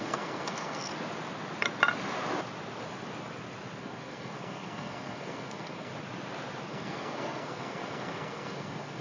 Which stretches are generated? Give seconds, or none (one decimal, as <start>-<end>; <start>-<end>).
0.0-0.9; 3.8-5.9; 6.7-9.0